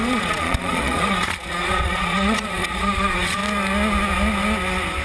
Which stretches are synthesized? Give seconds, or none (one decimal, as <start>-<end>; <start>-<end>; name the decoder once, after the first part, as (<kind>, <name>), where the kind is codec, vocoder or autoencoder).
0.0-3.4 (vocoder, Vocos)